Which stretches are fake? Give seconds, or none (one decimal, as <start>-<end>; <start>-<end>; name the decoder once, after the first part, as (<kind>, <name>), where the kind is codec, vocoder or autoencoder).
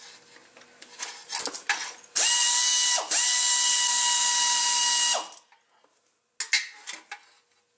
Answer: none